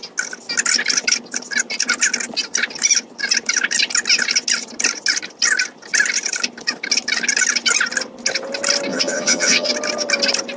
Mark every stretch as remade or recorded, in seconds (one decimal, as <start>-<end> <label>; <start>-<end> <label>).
0.0-8.9 recorded; 8.9-9.7 remade; 9.7-10.6 recorded